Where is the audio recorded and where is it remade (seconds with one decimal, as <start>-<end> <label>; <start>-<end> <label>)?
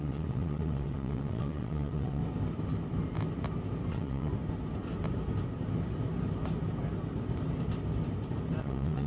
0.0-2.2 remade; 2.2-3.9 recorded; 3.9-4.3 remade; 4.3-8.6 recorded; 8.6-9.1 remade